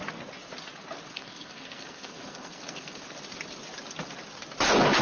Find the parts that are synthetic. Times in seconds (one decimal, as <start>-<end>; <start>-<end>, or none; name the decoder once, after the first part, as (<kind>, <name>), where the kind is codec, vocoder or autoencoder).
1.1-3.0 (codec, SNAC)